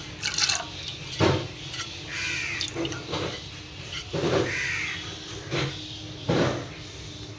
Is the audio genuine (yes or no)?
yes